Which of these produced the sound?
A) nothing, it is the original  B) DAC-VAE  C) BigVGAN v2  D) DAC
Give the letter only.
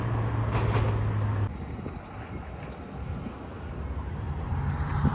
A